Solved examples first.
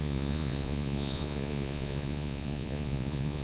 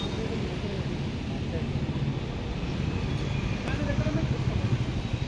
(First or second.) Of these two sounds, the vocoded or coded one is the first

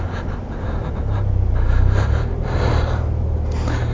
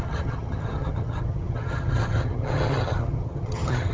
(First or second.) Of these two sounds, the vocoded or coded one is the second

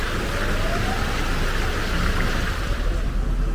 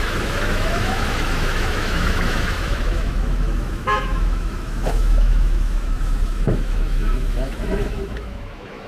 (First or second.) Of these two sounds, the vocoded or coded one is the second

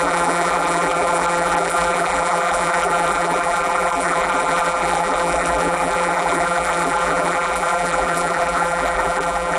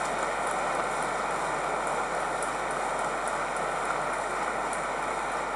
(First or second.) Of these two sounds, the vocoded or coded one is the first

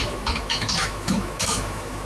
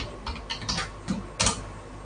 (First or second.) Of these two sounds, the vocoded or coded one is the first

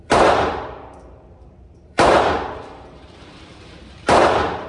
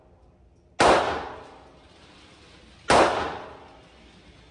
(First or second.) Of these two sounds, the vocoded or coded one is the first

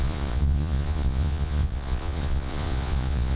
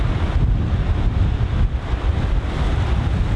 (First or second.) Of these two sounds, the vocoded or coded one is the first